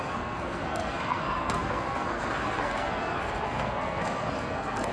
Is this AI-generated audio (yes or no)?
yes